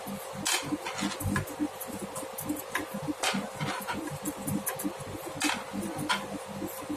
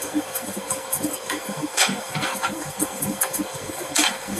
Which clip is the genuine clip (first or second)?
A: first